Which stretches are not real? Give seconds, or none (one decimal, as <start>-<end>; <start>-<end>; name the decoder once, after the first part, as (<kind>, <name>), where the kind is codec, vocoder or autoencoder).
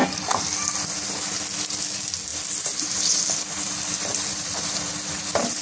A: 2.3-3.2 (vocoder, BigVGAN v2); 4.1-4.9